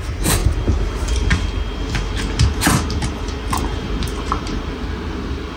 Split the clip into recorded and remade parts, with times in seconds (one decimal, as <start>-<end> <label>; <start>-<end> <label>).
0.0-3.7 recorded; 3.7-4.6 remade; 4.6-5.6 recorded